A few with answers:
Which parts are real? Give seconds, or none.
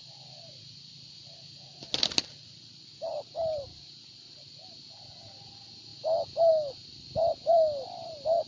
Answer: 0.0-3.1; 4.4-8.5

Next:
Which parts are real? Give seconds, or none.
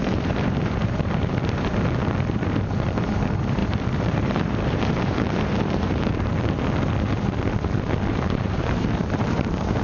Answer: 6.3-8.1